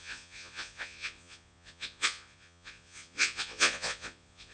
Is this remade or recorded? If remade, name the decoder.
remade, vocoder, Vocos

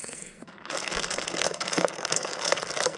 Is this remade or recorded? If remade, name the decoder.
remade, codec, SNAC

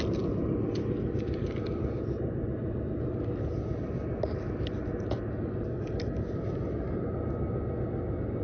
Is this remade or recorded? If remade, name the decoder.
recorded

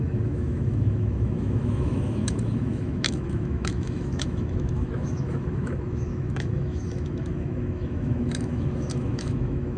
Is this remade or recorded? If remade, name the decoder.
remade, autoencoder, DAC-VAE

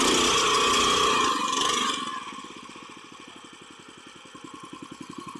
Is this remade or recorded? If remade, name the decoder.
recorded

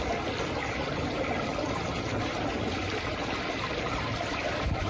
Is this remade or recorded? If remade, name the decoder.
recorded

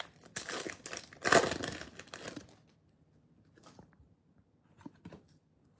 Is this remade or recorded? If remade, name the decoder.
recorded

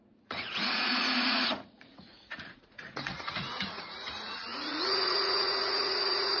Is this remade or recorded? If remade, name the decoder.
remade, vocoder, Vocos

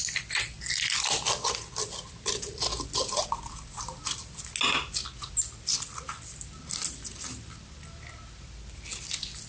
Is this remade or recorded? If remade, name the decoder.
recorded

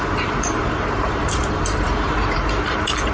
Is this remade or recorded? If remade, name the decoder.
remade, vocoder, BigVGAN v2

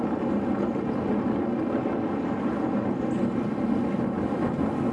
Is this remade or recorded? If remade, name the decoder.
recorded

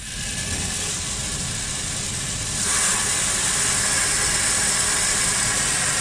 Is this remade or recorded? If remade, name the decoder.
recorded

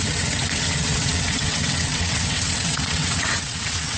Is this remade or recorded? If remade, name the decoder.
remade, vocoder, WaveNeXt